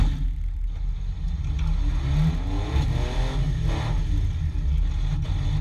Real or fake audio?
real